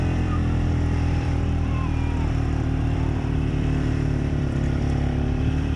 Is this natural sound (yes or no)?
no